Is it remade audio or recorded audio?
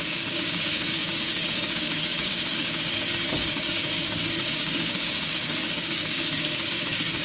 remade